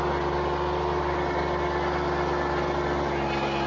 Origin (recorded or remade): recorded